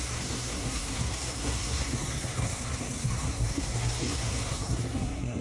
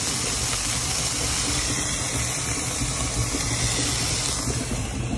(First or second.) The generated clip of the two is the first